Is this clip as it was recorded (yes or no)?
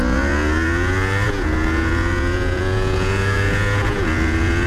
no